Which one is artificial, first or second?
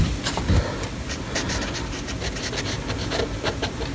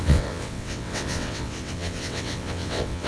second